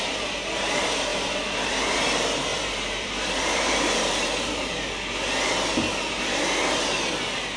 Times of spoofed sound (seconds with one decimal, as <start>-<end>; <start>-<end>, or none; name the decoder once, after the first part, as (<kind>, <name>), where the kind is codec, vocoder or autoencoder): 1.1-2.1 (vocoder, BigVGAN v2); 2.5-4.9